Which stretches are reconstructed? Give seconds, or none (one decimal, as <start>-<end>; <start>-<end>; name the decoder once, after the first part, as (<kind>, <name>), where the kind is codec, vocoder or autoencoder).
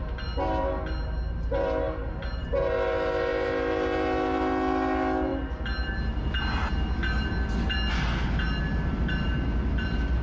none